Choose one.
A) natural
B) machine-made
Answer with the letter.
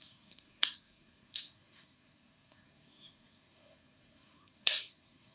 B